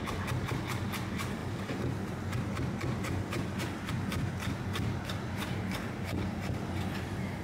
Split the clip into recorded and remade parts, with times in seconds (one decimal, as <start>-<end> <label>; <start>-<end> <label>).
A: 0.0-7.4 recorded